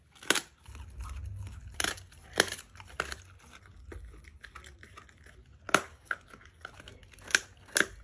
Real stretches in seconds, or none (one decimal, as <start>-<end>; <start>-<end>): 0.0-5.9; 6.5-8.0